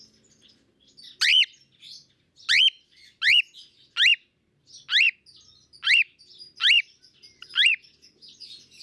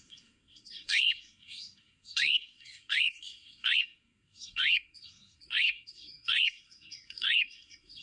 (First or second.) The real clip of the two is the first